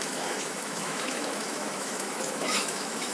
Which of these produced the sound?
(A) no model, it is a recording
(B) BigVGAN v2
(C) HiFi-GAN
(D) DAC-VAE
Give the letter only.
D